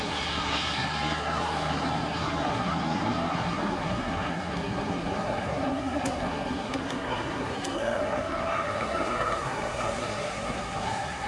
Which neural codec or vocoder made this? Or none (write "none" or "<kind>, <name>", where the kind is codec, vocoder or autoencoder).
codec, SNAC